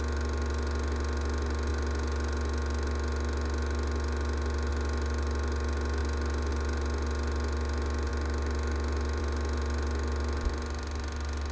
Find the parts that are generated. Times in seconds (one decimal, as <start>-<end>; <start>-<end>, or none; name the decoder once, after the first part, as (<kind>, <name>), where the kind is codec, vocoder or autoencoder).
none